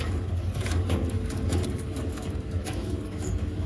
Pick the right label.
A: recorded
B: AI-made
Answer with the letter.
B